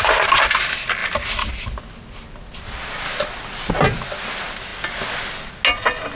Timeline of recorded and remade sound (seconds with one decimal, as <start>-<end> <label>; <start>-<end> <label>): 0.0-6.2 recorded